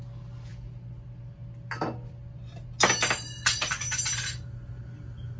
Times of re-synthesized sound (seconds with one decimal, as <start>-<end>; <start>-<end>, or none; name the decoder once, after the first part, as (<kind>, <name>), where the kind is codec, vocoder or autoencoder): none